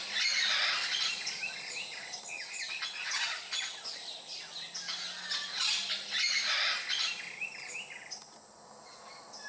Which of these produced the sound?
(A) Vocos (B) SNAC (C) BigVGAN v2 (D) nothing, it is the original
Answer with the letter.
D